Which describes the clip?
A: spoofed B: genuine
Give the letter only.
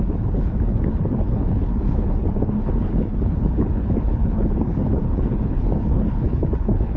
A